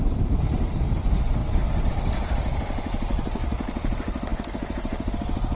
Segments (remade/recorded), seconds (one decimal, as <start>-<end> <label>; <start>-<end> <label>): 0.0-5.5 recorded